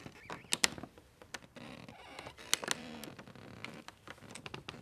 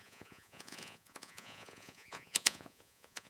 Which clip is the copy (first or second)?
second